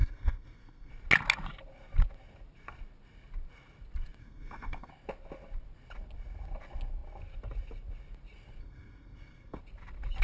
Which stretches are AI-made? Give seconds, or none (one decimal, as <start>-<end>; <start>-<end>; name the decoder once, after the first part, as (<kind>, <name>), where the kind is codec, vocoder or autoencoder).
0.0-0.9 (codec, SNAC); 4.2-4.9; 8.6-9.6